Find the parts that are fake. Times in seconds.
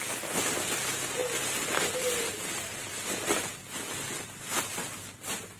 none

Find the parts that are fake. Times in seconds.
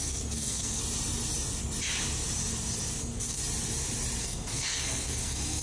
0.0-0.8 (codec, SNAC); 3.0-3.4; 4.2-5.6